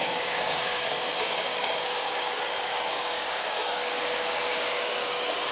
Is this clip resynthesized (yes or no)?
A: yes